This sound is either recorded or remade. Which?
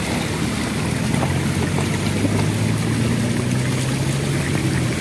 recorded